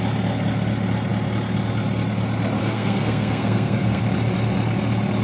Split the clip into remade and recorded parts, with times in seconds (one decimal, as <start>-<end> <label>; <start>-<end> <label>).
0.0-2.6 recorded; 2.6-4.0 remade; 4.0-5.2 recorded